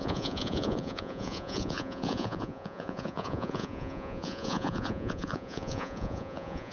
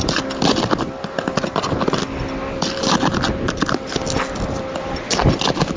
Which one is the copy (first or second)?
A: first